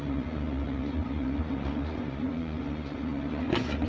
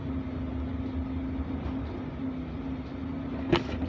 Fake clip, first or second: first